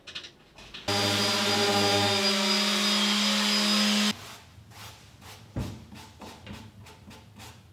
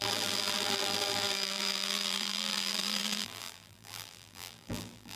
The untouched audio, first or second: first